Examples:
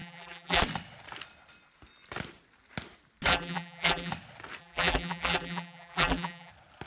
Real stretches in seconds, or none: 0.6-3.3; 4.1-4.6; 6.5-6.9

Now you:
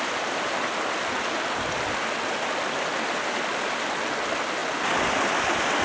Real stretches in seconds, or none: 0.0-5.8

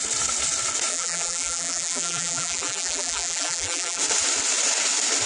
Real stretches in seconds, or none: 0.0-0.9; 4.0-5.3